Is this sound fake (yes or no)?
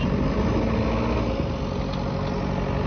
no